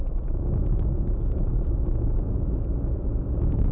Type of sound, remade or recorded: remade